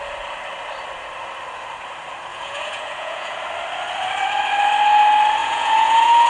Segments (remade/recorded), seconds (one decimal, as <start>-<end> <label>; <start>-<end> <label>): 0.0-2.3 recorded; 2.3-3.4 remade; 3.4-5.4 recorded; 5.4-6.3 remade